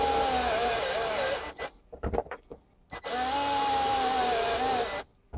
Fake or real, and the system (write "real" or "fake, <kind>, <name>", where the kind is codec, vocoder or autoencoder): real